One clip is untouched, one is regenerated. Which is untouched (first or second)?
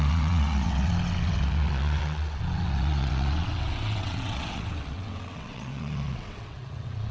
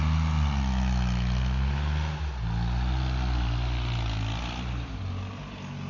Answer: second